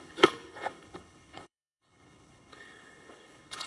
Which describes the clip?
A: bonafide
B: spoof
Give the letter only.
B